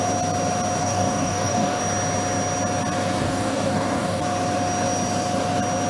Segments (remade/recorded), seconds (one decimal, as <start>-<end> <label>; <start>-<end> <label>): 0.0-0.8 recorded; 0.8-1.8 remade; 1.8-3.2 recorded; 3.2-4.2 remade; 4.2-5.9 recorded